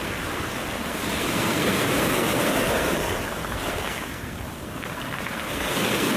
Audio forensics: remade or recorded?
remade